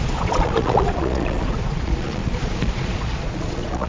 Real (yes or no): no